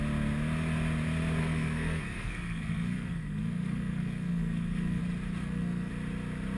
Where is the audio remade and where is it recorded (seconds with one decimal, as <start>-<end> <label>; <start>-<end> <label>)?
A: 0.0-1.4 recorded; 1.4-5.0 remade; 5.0-5.4 recorded; 5.4-5.9 remade; 5.9-6.6 recorded